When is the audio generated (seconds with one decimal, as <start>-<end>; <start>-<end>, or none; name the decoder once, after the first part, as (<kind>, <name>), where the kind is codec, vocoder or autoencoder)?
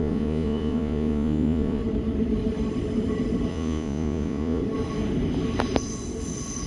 0.0-1.8 (vocoder, Vocos); 3.5-4.6